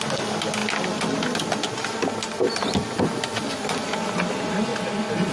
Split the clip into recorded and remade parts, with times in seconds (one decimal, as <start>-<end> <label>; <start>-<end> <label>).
0.0-5.3 recorded